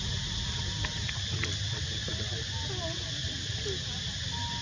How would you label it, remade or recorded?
recorded